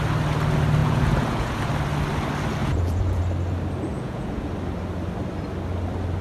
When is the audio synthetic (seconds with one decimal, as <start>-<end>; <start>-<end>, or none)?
0.8-1.6; 2.6-3.2; 3.9-4.5